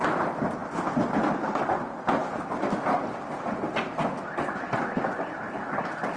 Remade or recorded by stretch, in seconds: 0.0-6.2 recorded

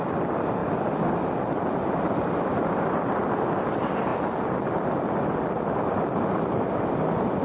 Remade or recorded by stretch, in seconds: 0.0-0.6 recorded; 0.6-3.3 remade; 3.3-4.1 recorded; 4.1-5.1 remade; 5.1-7.4 recorded

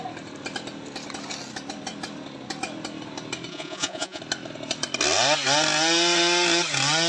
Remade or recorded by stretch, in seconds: 0.0-3.5 recorded; 3.5-4.2 remade; 4.2-7.1 recorded

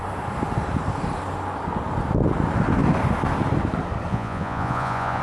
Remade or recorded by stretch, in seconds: 0.0-4.1 recorded; 4.1-5.2 remade

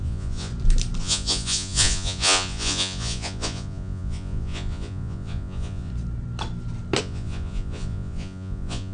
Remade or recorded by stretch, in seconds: 0.0-0.5 remade; 0.5-1.0 recorded; 1.0-5.9 remade; 5.9-7.0 recorded; 7.0-8.9 remade

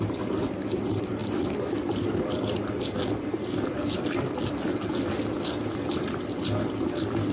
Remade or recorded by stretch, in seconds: 0.0-7.3 recorded

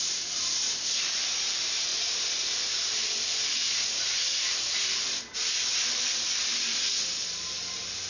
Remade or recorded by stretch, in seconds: 0.0-6.5 remade; 6.5-7.2 recorded; 7.2-8.1 remade

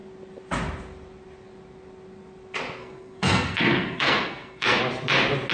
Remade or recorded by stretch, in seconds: 0.0-2.8 recorded; 2.8-4.8 remade; 4.8-5.5 recorded